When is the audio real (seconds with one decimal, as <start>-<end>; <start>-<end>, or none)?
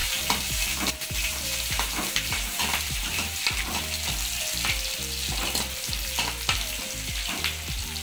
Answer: 3.7-8.0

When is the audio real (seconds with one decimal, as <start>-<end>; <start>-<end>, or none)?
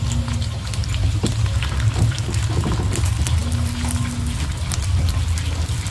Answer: 0.0-5.9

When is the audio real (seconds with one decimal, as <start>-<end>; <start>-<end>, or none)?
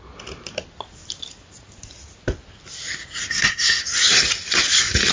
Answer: 0.0-3.3; 3.8-5.1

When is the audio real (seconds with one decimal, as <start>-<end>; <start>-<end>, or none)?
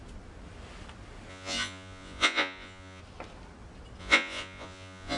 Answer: 0.0-1.3; 3.0-4.0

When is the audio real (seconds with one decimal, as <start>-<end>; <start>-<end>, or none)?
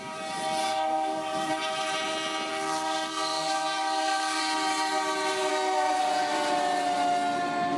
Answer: 0.0-0.6; 1.5-2.5; 4.4-5.5; 6.0-7.8